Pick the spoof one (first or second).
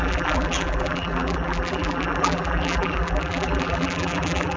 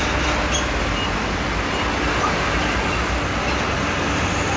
first